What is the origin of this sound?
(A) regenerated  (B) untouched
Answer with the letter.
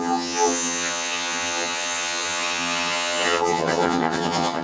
A